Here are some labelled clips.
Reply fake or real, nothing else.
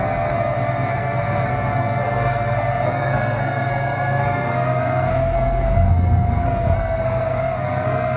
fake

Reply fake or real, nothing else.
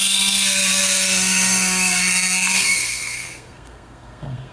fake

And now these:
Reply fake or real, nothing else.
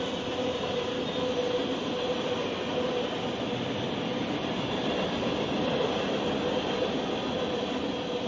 real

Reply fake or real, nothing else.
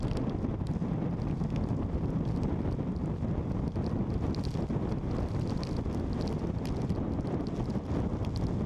real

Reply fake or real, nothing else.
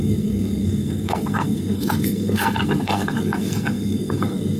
fake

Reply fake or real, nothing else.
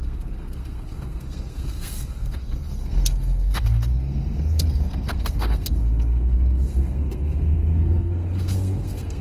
fake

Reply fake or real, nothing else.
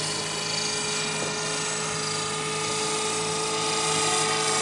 real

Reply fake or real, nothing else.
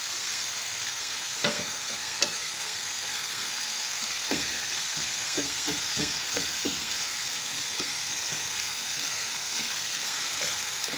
fake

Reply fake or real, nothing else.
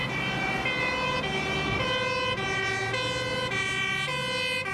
real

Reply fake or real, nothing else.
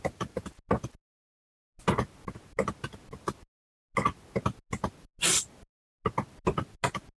real